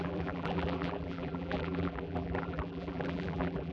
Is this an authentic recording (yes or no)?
no